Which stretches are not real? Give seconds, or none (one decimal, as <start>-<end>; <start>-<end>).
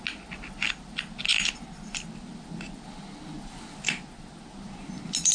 none